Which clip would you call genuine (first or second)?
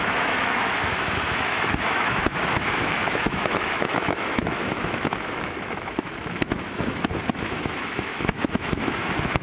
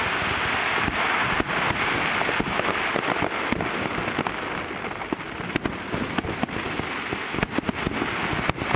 second